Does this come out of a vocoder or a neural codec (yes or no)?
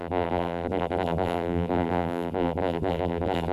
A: yes